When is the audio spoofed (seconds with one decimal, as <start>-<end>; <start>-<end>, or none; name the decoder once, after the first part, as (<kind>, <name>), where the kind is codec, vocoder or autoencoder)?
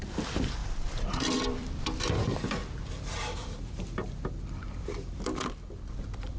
0.6-1.8 (vocoder, BigVGAN v2); 2.6-6.4